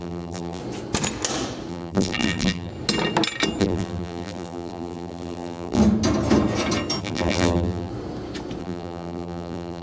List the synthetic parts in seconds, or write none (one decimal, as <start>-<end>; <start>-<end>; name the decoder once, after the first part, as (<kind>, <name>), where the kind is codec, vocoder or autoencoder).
0.0-0.6 (vocoder, BigVGAN v2); 1.7-2.7; 3.6-5.8; 7.0-7.9; 8.6-9.8